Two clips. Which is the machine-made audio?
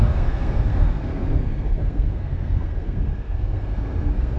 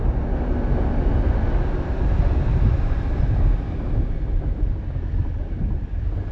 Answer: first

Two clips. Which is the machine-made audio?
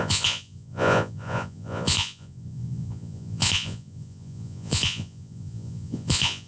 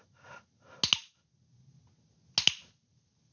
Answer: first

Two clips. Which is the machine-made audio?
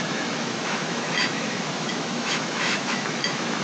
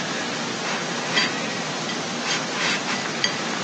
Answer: first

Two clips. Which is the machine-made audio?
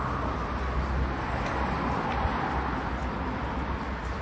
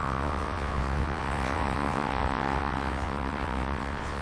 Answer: second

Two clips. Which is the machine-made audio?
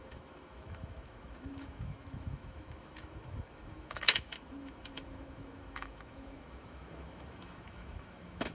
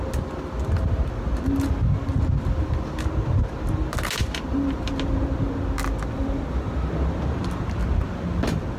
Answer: first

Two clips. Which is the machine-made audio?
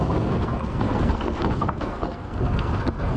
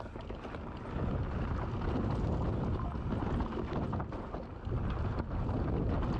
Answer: first